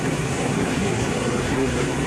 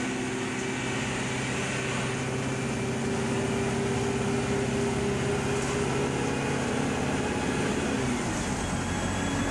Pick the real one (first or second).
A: second